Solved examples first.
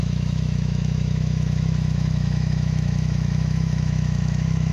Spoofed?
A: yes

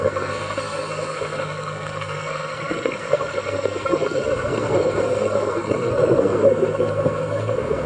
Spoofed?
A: yes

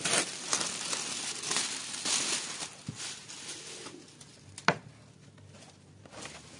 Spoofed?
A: no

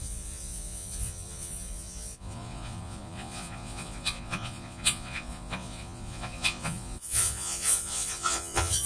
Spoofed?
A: yes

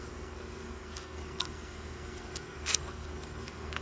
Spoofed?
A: yes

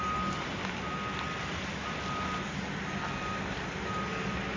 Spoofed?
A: no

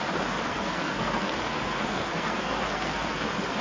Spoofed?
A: yes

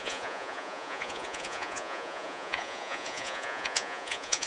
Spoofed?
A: yes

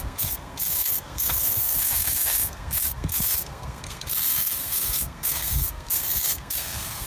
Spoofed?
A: yes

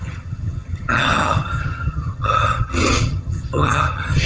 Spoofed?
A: yes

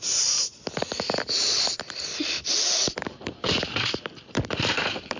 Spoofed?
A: yes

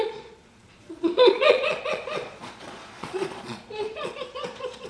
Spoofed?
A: yes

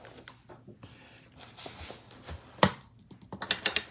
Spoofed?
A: no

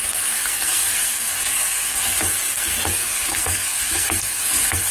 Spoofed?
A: yes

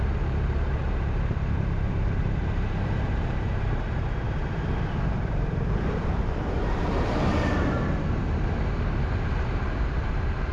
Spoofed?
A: yes